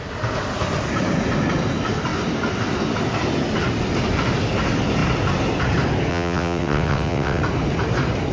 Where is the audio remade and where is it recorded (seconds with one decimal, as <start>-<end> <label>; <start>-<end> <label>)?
0.0-6.1 recorded; 6.1-7.4 remade; 7.4-8.3 recorded